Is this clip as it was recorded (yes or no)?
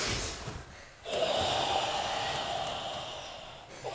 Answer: yes